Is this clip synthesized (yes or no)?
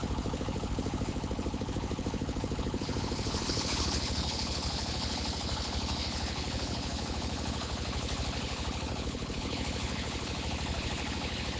yes